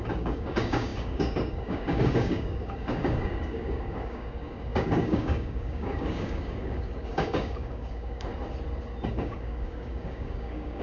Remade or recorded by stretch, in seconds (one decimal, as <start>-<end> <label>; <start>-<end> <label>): 0.0-8.3 remade; 8.3-9.1 recorded; 9.1-10.8 remade